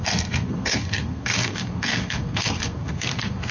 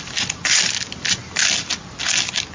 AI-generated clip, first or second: first